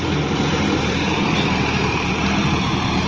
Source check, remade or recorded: remade